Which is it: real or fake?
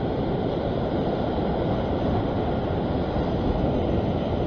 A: real